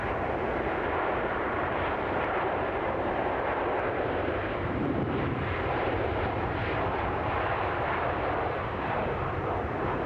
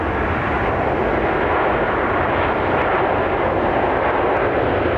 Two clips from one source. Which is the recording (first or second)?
second